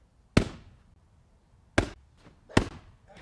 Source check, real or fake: real